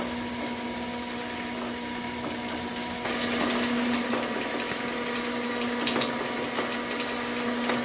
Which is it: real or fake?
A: real